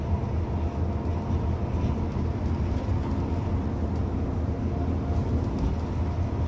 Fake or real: real